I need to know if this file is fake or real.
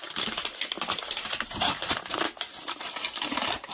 real